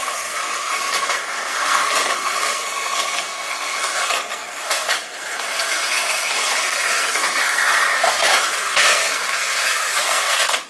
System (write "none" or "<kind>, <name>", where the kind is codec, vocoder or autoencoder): codec, SNAC